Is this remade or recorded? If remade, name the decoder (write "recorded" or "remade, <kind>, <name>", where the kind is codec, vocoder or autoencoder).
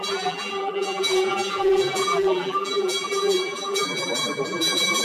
remade, vocoder, BigVGAN v2